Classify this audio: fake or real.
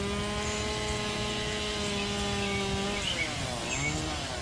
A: real